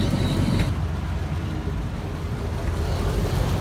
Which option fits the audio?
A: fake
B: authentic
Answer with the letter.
B